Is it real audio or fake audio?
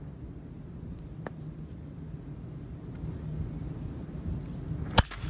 real